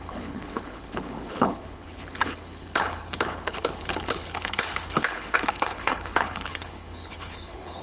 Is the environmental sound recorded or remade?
remade